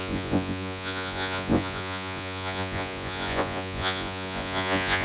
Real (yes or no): no